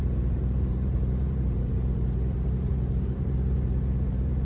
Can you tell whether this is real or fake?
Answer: fake